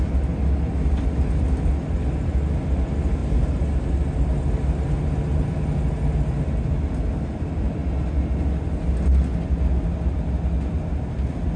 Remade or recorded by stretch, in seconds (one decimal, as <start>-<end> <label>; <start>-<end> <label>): 0.0-11.6 recorded